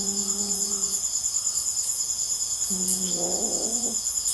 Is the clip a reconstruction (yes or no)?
yes